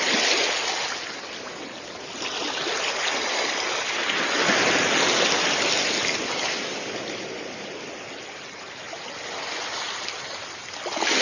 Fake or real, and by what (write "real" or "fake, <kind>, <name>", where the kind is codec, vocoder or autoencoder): real